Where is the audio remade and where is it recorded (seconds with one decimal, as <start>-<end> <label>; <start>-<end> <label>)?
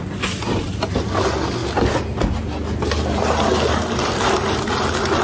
0.0-5.2 recorded